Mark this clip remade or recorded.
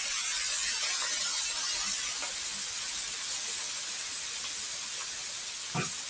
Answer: recorded